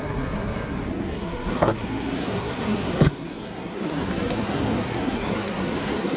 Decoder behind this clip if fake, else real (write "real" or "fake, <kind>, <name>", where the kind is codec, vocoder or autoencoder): fake, codec, SNAC